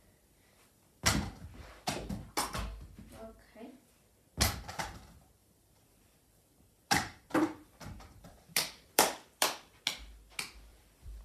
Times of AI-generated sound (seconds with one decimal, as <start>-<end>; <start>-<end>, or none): 5.4-9.8; 10.7-11.2